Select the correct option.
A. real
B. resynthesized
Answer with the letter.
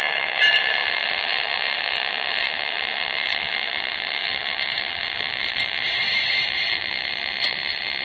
B